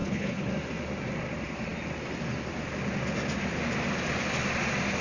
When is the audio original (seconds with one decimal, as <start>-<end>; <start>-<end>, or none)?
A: 0.5-5.0